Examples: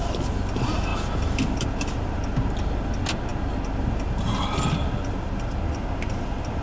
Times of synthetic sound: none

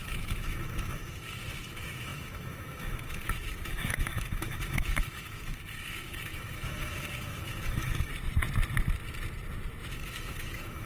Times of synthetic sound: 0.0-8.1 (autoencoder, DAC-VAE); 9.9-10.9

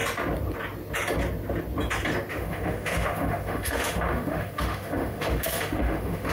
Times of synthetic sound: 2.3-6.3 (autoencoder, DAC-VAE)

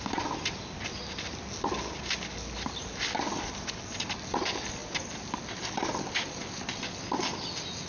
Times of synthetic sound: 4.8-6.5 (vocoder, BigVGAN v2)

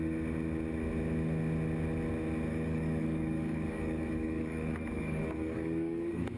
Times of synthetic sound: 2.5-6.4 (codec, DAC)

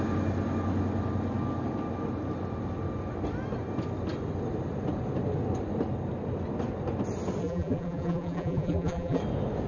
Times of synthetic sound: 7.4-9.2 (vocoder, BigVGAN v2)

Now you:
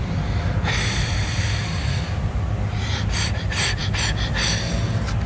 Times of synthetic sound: none

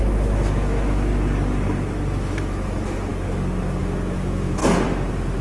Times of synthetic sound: 0.0-1.1 (autoencoder, DAC-VAE); 2.3-3.1; 3.8-4.6